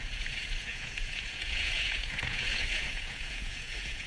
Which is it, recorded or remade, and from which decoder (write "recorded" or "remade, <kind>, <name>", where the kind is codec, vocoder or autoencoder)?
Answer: remade, vocoder, Vocos